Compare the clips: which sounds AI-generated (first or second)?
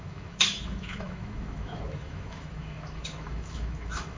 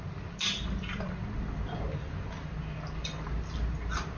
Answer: first